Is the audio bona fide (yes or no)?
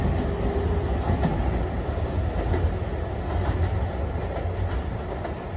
yes